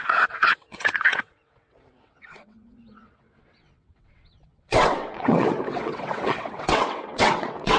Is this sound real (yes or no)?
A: no